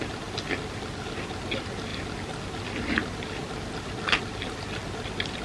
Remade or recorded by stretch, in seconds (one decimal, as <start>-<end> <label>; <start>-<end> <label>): 0.0-5.4 recorded